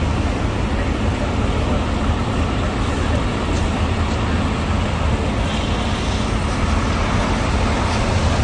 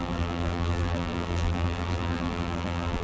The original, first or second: first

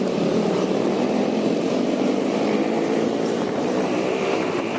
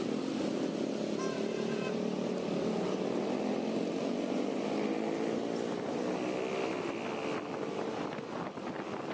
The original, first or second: second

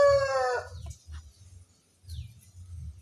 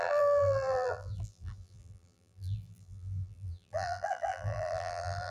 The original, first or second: first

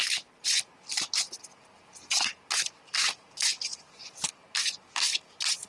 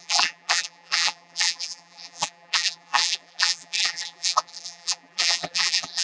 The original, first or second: first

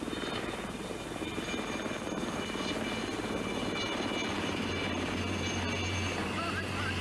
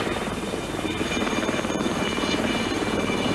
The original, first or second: first